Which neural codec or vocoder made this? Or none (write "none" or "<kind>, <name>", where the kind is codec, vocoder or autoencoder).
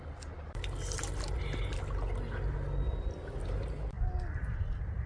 none